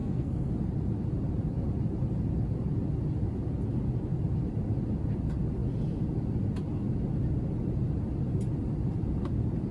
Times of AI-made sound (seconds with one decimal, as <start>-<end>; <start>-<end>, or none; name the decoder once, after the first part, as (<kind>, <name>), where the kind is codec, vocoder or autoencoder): 0.0-0.5 (codec, SNAC)